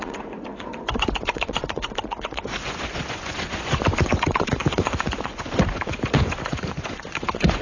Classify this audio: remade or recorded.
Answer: remade